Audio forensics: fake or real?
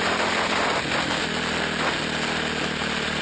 real